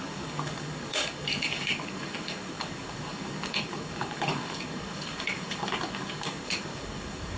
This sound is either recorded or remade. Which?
remade